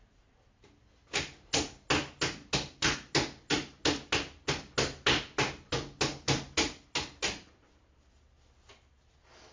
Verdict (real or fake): real